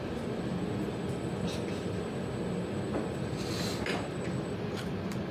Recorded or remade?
recorded